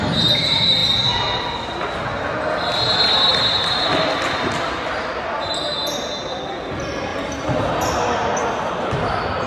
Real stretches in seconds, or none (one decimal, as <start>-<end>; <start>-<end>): 0.0-0.8; 1.4-3.3; 4.7-9.5

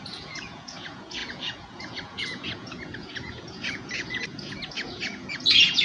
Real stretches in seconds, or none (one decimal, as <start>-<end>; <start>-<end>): none

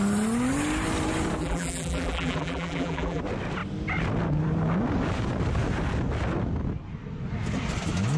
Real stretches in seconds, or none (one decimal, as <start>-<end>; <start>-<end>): 0.0-1.4; 3.2-8.2

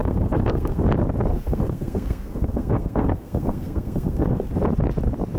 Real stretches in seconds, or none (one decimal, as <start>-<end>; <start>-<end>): 0.8-1.3; 4.5-5.4

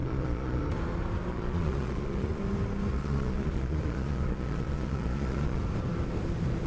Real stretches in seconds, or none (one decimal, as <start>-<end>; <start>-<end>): 0.6-1.3; 2.4-2.9; 5.6-6.7

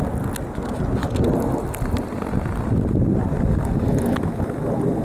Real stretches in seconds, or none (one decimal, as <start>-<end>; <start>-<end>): 0.0-5.0